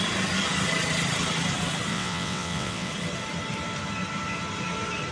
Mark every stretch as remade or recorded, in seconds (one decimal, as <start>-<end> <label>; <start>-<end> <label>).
0.0-1.9 recorded; 1.9-2.9 remade; 2.9-5.1 recorded